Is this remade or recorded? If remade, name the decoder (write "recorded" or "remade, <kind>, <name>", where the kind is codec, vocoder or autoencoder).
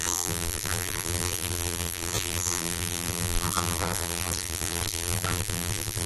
remade, vocoder, BigVGAN v2